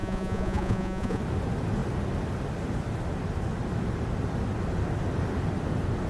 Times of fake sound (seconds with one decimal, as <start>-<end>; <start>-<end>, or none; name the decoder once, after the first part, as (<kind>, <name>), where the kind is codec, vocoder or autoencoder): 0.0-1.2 (vocoder, Vocos)